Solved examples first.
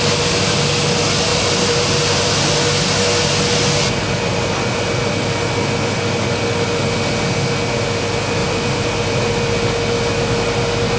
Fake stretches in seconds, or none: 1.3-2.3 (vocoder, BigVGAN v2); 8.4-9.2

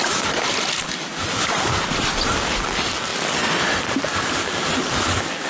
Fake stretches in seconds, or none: 0.0-1.7 (vocoder, BigVGAN v2); 3.1-3.8

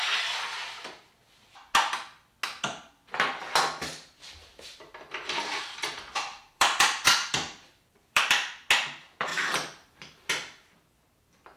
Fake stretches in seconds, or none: 4.2-5.6 (vocoder, BigVGAN v2); 6.3-8.2; 9.3-10.3

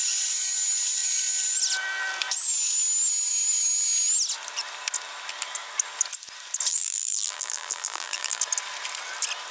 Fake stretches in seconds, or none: 6.7-8.4 (vocoder, BigVGAN v2)